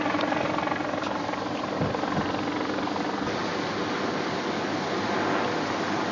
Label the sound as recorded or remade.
recorded